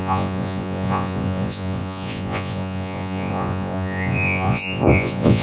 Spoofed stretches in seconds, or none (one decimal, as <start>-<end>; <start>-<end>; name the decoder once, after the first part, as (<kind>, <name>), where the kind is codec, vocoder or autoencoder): 0.0-5.4 (vocoder, Vocos)